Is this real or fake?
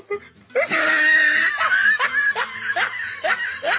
real